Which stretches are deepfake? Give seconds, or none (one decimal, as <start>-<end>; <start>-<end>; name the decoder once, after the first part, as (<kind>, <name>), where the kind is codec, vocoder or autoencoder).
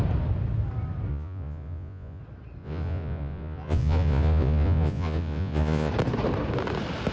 1.1-2.2 (vocoder, Vocos); 2.6-5.9